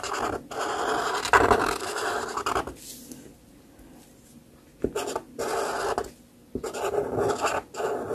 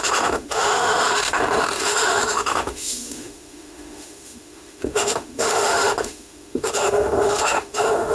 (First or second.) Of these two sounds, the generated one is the second